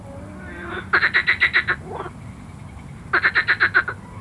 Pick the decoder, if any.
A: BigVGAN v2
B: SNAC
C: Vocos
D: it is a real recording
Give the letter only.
D